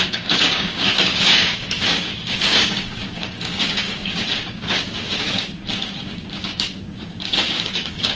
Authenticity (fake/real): fake